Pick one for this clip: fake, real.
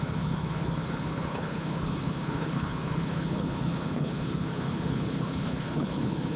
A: fake